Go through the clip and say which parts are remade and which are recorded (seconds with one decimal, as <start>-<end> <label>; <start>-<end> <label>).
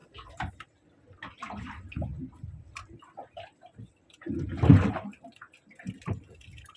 0.0-6.8 recorded